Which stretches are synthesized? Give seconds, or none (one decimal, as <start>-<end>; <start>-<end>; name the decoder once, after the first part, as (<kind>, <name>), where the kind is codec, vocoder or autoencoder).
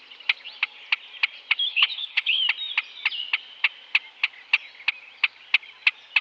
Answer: 1.7-2.4 (codec, HILCodec)